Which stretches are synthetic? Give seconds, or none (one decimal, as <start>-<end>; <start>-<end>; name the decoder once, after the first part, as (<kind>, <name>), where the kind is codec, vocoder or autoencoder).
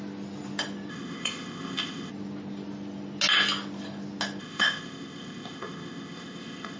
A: 0.9-2.1 (codec, ZipCodec); 4.4-6.8